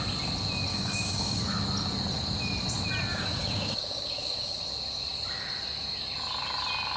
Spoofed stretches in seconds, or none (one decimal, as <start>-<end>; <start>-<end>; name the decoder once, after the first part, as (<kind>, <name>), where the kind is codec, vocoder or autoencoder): 0.7-1.4 (codec, DAC); 3.1-4.6

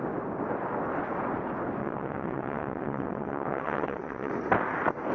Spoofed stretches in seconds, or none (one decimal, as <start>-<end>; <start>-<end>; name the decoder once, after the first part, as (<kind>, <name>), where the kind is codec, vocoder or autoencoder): 1.8-4.3 (vocoder, WaveNeXt)

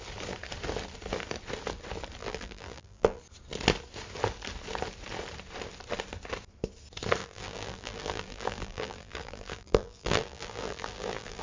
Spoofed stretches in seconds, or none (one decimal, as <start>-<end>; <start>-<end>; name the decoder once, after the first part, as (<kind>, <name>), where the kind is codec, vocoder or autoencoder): 2.2-3.2 (vocoder, BigVGAN v2); 7.2-11.4

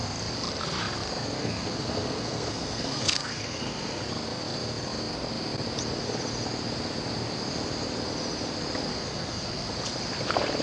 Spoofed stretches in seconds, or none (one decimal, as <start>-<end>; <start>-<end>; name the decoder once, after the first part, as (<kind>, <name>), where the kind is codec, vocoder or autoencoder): 1.4-4.0 (codec, SNAC); 8.9-9.7